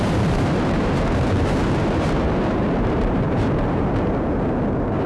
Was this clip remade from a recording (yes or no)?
yes